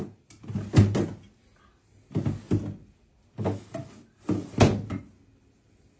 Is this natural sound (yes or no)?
yes